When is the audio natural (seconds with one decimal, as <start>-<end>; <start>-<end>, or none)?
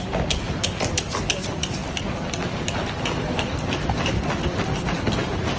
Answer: 0.0-5.6